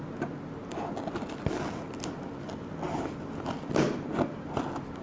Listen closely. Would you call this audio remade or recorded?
recorded